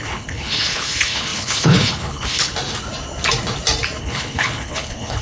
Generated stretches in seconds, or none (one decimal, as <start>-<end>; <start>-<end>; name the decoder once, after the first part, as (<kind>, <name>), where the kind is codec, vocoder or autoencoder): 0.0-2.5 (codec, HILCodec); 4.0-5.2